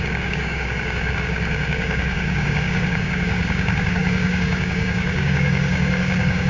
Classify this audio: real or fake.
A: fake